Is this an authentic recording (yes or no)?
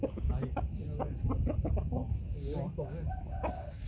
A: yes